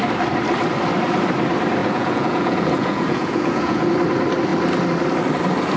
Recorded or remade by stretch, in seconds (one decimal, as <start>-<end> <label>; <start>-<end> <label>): 0.0-1.8 recorded; 1.8-3.9 remade; 3.9-5.8 recorded